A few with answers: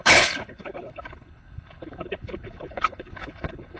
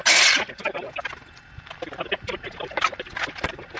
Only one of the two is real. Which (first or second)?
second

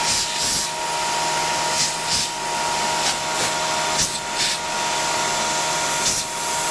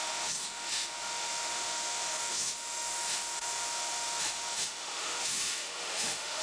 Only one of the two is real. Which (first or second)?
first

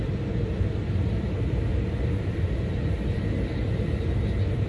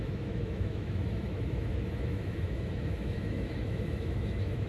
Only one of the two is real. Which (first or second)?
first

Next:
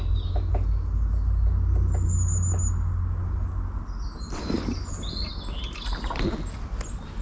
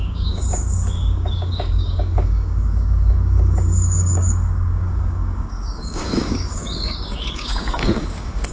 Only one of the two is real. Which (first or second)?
first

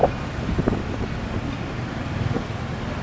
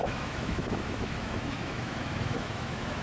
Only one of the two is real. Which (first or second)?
first